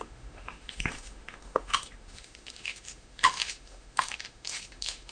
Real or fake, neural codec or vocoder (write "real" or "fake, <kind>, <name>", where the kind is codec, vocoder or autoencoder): fake, autoencoder, DAC-VAE